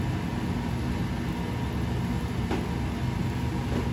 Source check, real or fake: real